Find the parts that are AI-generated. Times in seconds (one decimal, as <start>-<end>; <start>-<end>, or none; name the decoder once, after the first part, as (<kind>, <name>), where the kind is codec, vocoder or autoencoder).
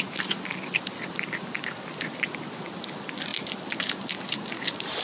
none